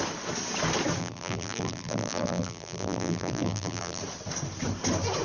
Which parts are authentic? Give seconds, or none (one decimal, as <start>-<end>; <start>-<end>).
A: 0.0-1.0; 4.0-5.2